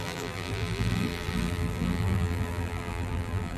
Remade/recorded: remade